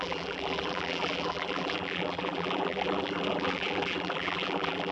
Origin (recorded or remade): remade